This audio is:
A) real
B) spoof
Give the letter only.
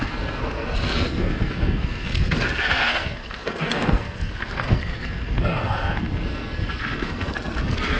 B